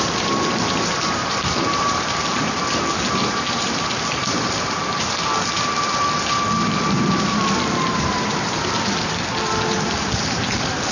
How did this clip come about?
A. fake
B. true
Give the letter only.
A